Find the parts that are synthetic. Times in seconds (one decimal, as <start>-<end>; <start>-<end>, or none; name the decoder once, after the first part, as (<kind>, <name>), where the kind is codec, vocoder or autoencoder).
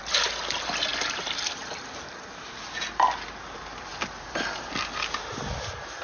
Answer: 3.9-4.7 (vocoder, BigVGAN v2)